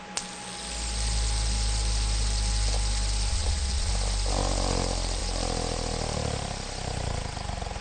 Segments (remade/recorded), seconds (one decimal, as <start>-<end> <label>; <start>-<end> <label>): 0.0-3.3 recorded; 3.3-3.9 remade; 3.9-7.8 recorded